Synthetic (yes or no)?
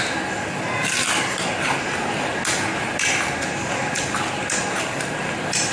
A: no